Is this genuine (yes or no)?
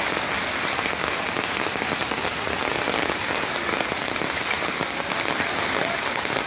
yes